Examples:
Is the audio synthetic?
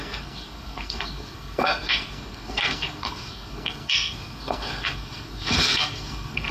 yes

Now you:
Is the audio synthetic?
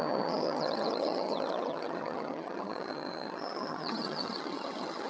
yes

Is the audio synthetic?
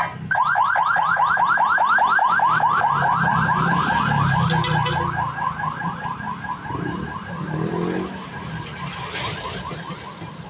no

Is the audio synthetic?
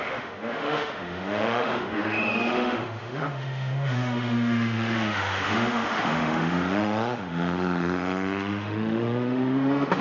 yes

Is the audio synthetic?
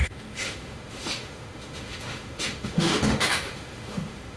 yes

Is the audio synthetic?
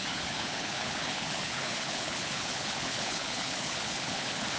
yes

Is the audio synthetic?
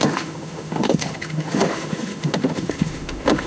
yes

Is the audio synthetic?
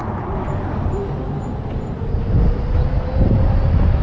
no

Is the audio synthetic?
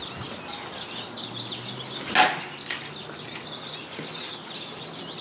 no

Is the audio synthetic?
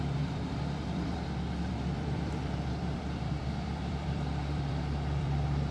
yes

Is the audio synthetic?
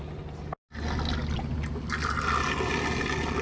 no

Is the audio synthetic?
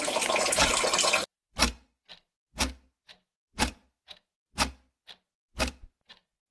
no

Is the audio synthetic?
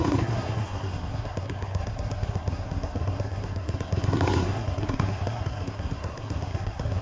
yes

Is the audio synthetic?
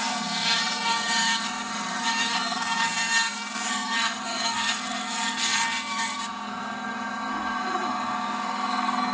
yes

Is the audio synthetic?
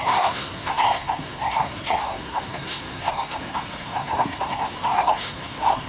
yes